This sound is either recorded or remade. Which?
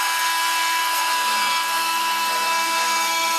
remade